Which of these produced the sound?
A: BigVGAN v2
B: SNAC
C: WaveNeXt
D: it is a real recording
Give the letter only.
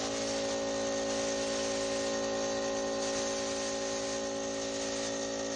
D